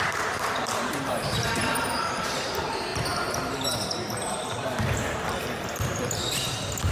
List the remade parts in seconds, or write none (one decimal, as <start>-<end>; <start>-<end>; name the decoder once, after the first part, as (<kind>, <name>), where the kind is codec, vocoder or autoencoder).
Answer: 0.0-1.6 (vocoder, BigVGAN v2); 2.1-6.9